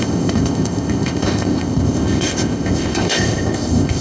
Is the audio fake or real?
fake